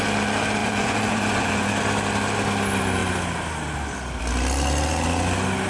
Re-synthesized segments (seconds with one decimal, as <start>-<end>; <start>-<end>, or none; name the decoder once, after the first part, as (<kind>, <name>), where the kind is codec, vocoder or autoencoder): 0.6-1.7 (vocoder, Vocos)